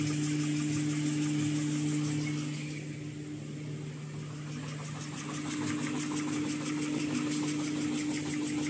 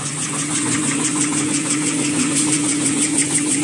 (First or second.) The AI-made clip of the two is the second